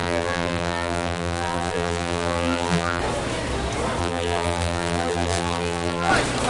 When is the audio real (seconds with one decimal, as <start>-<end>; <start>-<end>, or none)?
3.0-4.0; 6.1-6.5